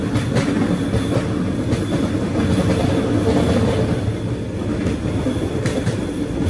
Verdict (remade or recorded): recorded